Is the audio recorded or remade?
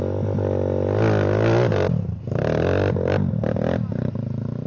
recorded